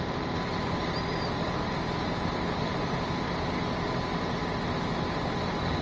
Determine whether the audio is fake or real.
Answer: real